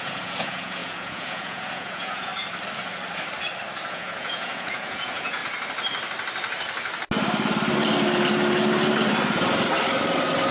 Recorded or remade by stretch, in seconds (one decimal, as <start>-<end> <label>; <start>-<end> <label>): 0.0-2.3 remade; 2.3-3.9 recorded; 3.9-5.4 remade; 5.4-10.5 recorded

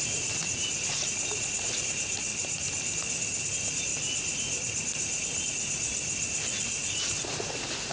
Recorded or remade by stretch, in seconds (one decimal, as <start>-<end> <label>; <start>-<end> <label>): 0.0-2.3 remade; 2.3-3.5 recorded; 3.5-5.9 remade; 5.9-6.7 recorded; 6.7-7.9 remade

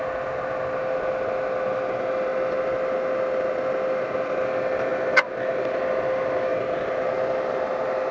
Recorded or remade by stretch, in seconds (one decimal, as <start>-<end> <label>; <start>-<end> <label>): 0.0-8.1 recorded

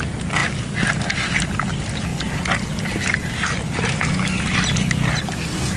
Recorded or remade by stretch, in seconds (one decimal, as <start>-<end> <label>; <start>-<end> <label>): 0.0-5.8 recorded